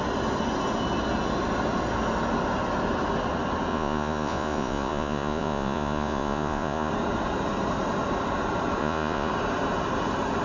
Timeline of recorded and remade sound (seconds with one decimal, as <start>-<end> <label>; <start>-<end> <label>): 0.0-3.7 recorded; 3.7-6.9 remade; 6.9-8.8 recorded; 8.8-9.3 remade; 9.3-10.4 recorded

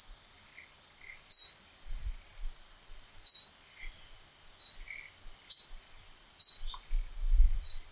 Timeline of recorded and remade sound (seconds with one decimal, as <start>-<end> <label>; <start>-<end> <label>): 0.0-7.9 recorded

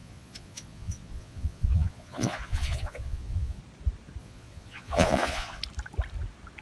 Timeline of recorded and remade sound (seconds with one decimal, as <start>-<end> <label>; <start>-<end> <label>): 0.0-3.6 remade; 3.6-4.2 recorded; 4.2-5.6 remade; 5.6-6.6 recorded

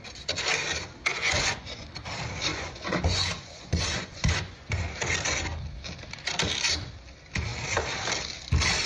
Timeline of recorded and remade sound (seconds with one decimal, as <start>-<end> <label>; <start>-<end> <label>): 0.0-1.1 recorded; 1.1-1.9 remade; 1.9-2.5 recorded; 2.5-4.8 remade; 4.8-8.9 recorded

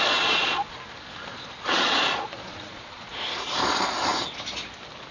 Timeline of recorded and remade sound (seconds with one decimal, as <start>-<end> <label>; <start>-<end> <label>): 0.0-0.8 remade; 0.8-1.3 recorded; 1.3-3.1 remade; 3.1-5.1 recorded

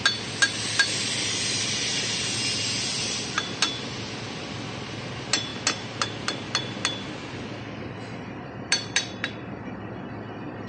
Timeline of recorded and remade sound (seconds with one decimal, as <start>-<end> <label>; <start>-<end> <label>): 0.0-10.7 recorded